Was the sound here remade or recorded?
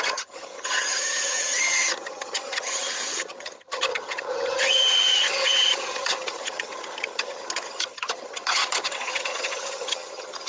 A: remade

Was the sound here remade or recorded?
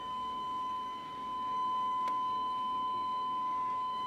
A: remade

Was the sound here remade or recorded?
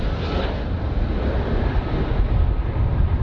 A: recorded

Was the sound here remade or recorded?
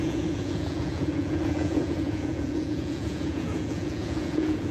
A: remade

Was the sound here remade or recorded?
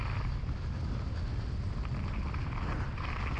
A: recorded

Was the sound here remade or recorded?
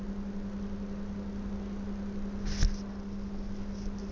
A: recorded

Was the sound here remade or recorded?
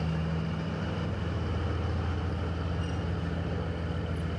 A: recorded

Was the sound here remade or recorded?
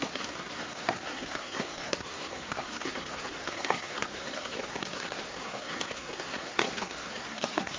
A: remade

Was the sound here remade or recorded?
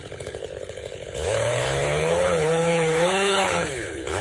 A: remade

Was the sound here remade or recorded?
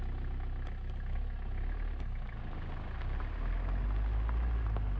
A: recorded